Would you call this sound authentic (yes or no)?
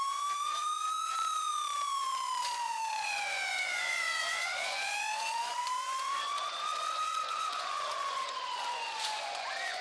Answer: no